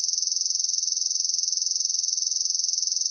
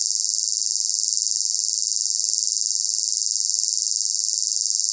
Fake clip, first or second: first